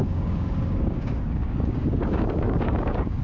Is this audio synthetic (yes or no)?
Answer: yes